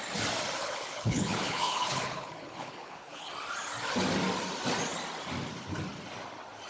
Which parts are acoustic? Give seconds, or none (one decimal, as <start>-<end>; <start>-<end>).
0.0-0.6; 3.3-6.7